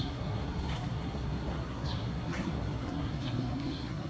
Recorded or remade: remade